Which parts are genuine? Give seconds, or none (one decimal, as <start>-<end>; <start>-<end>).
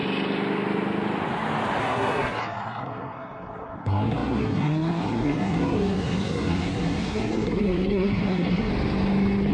0.0-1.8; 8.7-9.5